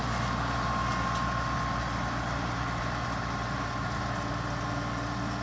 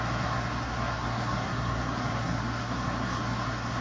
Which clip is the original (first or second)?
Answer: first